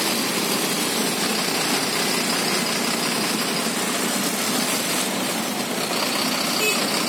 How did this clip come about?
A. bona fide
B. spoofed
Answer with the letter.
A